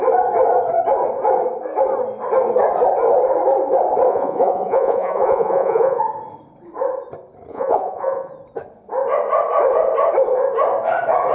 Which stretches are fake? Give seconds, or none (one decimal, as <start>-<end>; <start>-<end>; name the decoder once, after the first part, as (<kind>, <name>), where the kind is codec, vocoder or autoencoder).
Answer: 4.1-6.0 (vocoder, Vocos); 7.5-8.3